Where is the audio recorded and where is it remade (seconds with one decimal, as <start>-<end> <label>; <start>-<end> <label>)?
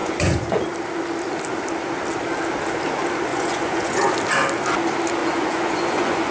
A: 0.0-0.7 remade; 0.7-3.3 recorded; 3.3-4.1 remade; 4.1-5.2 recorded; 5.2-6.3 remade